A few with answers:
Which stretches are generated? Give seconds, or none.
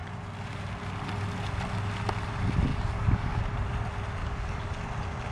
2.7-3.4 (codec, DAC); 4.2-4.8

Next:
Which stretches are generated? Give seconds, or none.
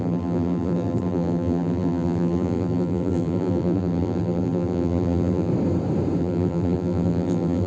0.0-5.5 (vocoder, BigVGAN v2); 6.2-7.7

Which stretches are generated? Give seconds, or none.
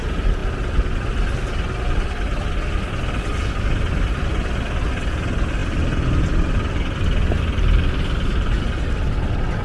none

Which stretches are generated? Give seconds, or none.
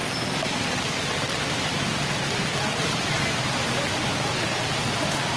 none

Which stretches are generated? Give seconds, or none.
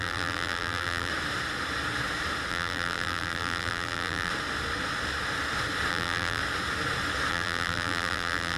0.0-1.1 (vocoder, BigVGAN v2); 2.5-4.3; 5.9-6.4; 7.3-8.6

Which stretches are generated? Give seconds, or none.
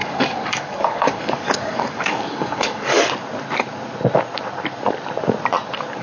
0.0-3.0 (codec, DAC)